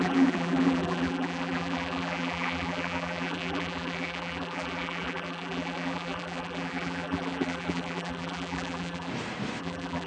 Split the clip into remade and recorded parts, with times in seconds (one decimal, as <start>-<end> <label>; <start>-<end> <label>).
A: 0.0-9.1 remade; 9.1-9.6 recorded; 9.6-10.1 remade